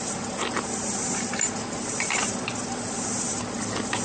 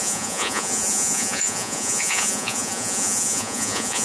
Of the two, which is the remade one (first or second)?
second